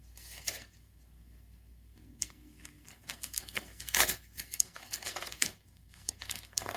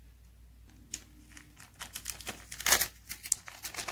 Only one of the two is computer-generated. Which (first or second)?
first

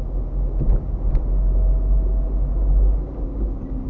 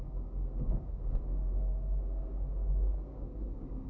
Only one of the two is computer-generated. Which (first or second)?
second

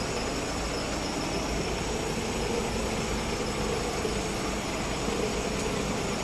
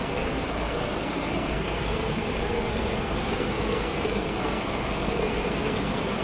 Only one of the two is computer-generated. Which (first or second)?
second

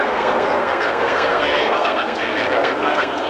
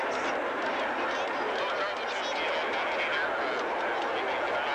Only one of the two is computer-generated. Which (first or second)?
first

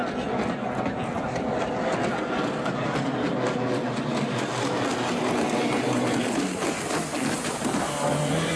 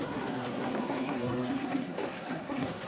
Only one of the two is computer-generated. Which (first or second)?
second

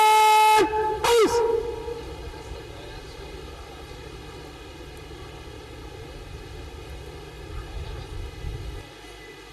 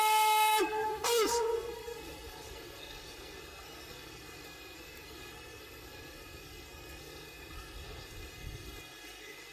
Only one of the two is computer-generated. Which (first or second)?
second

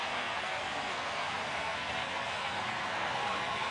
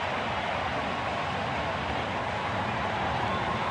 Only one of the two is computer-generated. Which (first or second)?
first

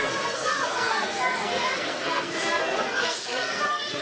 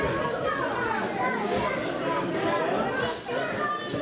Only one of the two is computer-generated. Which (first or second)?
first